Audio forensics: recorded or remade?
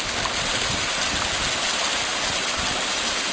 recorded